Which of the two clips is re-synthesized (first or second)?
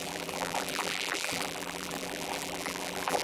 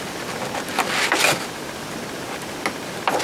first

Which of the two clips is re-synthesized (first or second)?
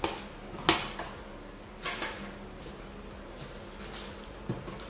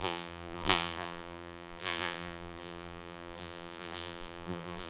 second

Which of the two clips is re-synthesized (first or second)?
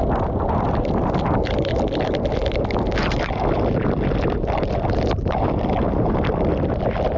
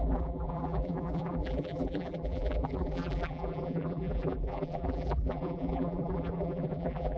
second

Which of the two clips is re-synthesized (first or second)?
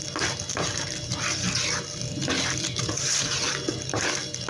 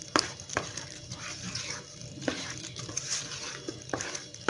second